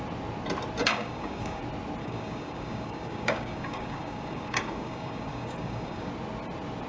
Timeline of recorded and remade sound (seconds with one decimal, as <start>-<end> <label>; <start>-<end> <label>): 0.0-0.8 recorded; 0.8-1.6 remade; 1.6-2.0 recorded; 2.0-6.1 remade; 6.1-6.9 recorded

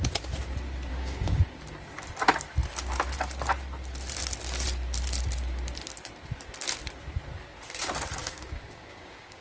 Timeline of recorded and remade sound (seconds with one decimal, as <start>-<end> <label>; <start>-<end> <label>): 0.0-0.9 recorded; 0.9-1.4 remade; 1.4-8.2 recorded; 8.2-9.4 remade

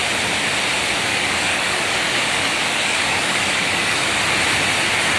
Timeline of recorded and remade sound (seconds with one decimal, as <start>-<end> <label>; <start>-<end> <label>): 0.0-1.1 recorded; 1.1-4.2 remade; 4.2-5.2 recorded

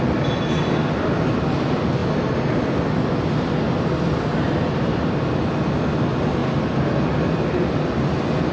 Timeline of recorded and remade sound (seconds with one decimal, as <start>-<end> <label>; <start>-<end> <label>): 0.0-8.5 recorded

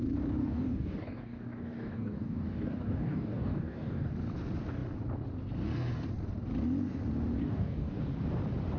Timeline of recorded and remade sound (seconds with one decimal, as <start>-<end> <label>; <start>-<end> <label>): 0.0-0.4 recorded; 0.4-4.1 remade; 4.1-7.4 recorded; 7.4-8.0 remade; 8.0-8.8 recorded

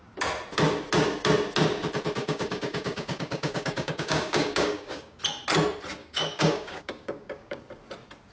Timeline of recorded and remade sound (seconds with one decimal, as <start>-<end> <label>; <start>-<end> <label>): 0.0-2.2 recorded; 2.2-5.2 remade; 5.2-6.0 recorded; 6.0-7.6 remade; 7.6-8.3 recorded

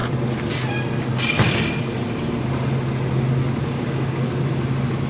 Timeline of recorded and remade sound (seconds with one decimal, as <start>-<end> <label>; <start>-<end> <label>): 0.0-3.6 recorded; 3.6-4.3 remade; 4.3-5.1 recorded

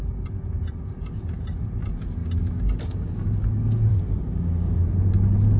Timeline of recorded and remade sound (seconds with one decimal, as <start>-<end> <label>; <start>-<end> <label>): 0.0-3.9 recorded; 3.9-4.8 remade; 4.8-5.6 recorded